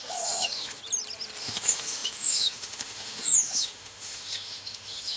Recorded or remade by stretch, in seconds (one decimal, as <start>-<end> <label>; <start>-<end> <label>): 0.0-0.8 remade; 0.8-1.4 recorded; 1.4-5.2 remade